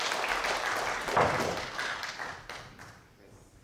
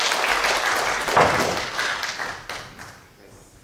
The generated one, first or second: first